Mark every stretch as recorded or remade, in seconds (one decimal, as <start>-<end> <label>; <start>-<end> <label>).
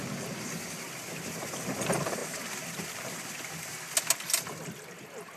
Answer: 0.0-5.4 recorded